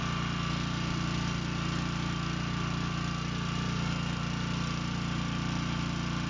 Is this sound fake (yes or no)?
no